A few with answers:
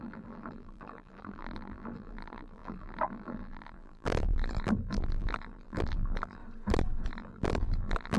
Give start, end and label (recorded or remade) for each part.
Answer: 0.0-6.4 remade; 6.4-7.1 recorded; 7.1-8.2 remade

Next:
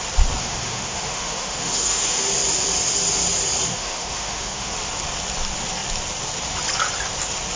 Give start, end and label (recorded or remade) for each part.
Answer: 0.0-0.4 recorded; 0.4-2.3 remade; 2.3-3.7 recorded; 3.7-4.7 remade; 4.7-7.6 recorded